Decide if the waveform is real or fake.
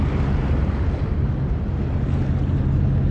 real